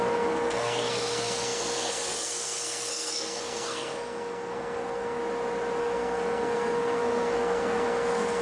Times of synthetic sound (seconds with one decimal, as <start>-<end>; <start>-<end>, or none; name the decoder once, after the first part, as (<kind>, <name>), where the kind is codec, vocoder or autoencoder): 0.0-5.2 (codec, SNAC); 5.8-8.4